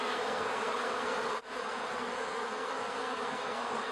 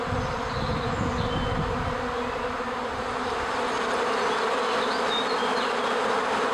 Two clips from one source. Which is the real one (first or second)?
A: second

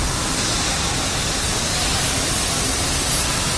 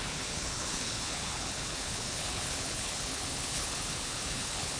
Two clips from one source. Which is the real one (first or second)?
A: first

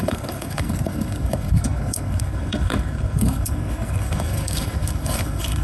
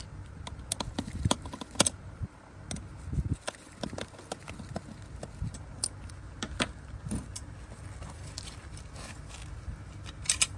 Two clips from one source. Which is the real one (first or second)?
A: second